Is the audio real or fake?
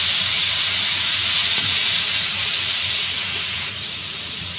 fake